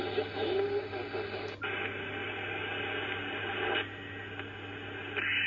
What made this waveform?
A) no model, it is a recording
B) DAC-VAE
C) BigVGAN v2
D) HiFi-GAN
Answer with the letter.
A